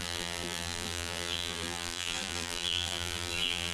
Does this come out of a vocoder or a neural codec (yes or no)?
yes